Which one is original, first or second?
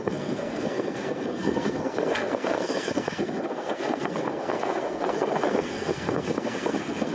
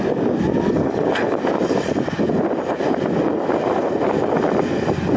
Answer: second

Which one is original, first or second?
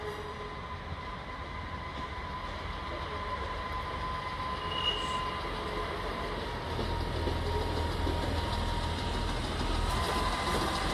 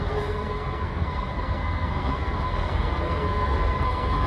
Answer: first